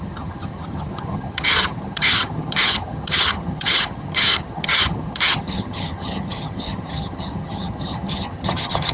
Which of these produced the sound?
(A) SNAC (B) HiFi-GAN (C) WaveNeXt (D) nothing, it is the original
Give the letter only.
B